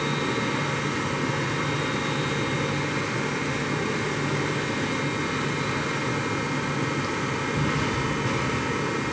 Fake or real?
real